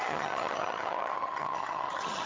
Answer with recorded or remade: remade